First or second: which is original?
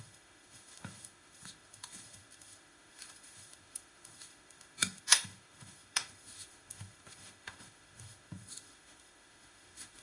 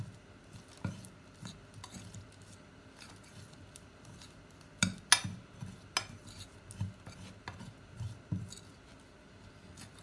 second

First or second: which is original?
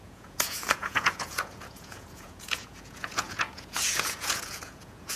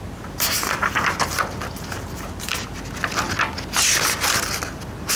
second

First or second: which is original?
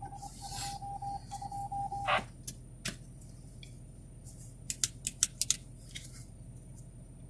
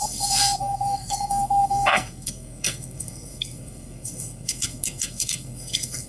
first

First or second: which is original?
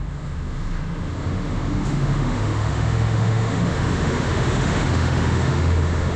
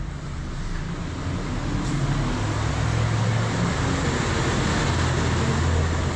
second